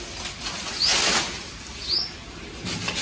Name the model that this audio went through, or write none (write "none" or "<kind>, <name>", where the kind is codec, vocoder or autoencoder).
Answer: none